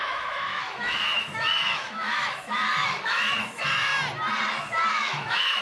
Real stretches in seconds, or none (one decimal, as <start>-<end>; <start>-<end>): 3.9-4.9